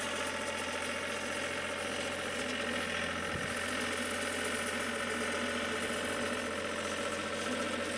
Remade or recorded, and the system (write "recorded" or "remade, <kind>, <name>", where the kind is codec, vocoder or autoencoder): recorded